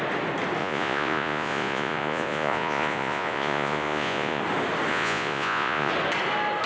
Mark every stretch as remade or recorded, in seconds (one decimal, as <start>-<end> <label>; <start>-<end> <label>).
0.0-0.6 recorded; 0.6-4.4 remade; 4.4-4.9 recorded; 4.9-5.9 remade; 5.9-6.7 recorded